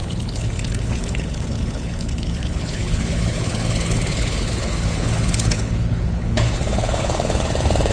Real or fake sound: fake